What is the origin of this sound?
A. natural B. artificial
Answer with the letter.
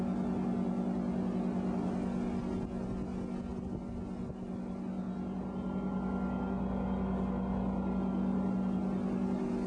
A